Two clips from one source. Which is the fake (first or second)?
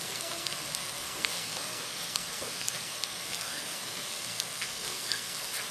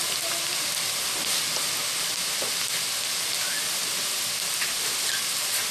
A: first